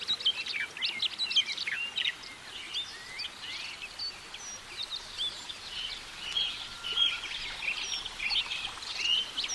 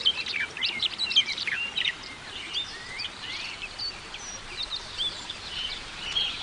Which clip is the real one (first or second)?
first